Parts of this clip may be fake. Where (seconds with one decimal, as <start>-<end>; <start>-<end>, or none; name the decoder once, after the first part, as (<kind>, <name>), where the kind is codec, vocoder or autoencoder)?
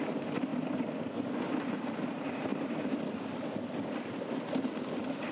none